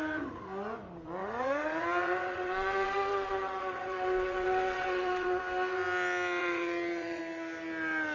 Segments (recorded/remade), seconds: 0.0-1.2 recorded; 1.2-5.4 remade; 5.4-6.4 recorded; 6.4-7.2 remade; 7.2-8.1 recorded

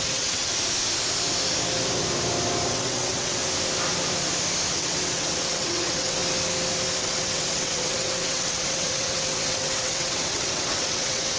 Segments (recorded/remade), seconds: 0.0-0.5 remade; 0.5-2.7 recorded; 2.7-3.4 remade; 3.4-4.7 recorded; 4.7-6.2 remade; 6.2-7.0 recorded; 7.0-11.4 remade

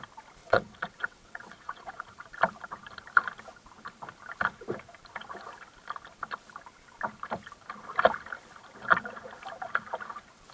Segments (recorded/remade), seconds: 0.0-0.4 recorded; 0.4-2.0 remade; 2.0-10.5 recorded

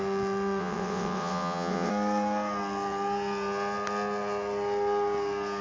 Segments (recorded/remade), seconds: 0.0-0.6 recorded; 0.6-1.9 remade; 1.9-5.6 recorded

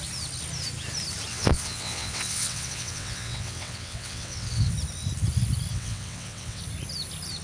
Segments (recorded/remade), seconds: 0.0-1.3 recorded; 1.3-4.7 remade; 4.7-5.7 recorded; 5.7-6.6 remade; 6.6-7.4 recorded

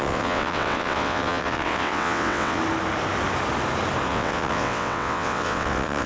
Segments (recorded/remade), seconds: 0.0-2.6 remade; 2.6-4.1 recorded; 4.1-6.1 remade

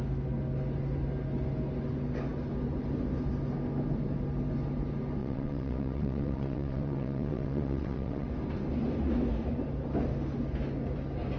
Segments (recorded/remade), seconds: 0.0-5.2 recorded; 5.2-8.3 remade; 8.3-11.4 recorded